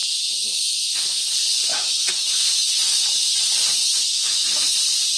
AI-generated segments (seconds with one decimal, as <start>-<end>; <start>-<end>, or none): 0.0-1.2; 1.7-2.8; 3.8-4.7